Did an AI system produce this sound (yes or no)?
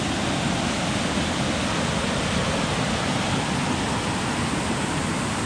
no